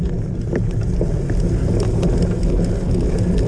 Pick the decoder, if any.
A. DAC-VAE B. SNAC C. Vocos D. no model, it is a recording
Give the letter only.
D